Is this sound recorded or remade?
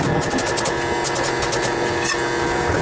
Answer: recorded